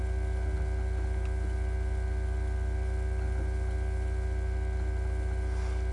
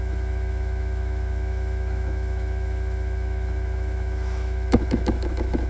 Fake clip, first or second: second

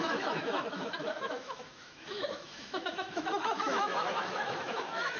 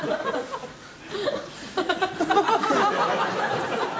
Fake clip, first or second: first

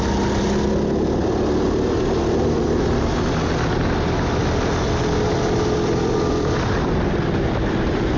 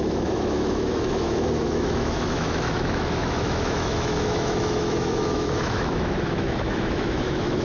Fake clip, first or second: second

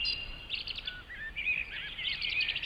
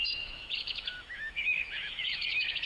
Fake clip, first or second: second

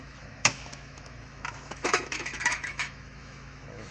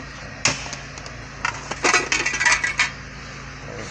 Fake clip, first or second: first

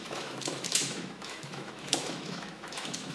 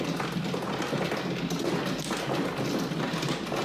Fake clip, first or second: first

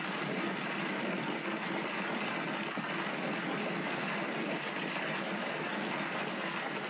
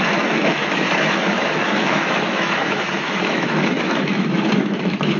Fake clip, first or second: second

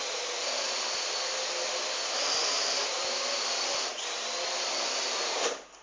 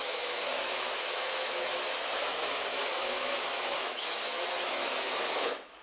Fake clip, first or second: second